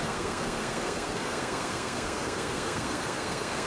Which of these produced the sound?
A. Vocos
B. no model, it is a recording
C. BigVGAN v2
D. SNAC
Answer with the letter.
D